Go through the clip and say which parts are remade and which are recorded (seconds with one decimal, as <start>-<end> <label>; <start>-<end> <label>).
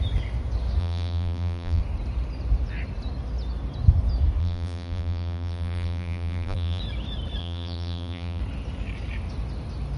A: 0.0-0.8 recorded; 0.8-1.8 remade; 1.8-4.4 recorded; 4.4-6.8 remade; 6.8-7.4 recorded; 7.4-8.4 remade; 8.4-10.0 recorded